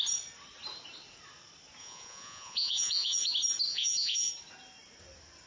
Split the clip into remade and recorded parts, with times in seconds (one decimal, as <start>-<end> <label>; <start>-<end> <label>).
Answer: 0.0-1.8 recorded; 1.8-3.3 remade; 3.3-3.7 recorded; 3.7-4.3 remade; 4.3-5.5 recorded